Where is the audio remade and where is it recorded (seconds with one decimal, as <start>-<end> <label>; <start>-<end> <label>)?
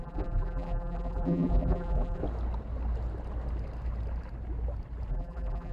0.0-2.2 remade; 2.2-5.1 recorded; 5.1-5.7 remade